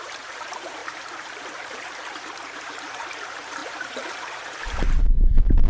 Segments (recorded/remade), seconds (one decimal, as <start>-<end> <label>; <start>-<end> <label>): 0.0-5.7 remade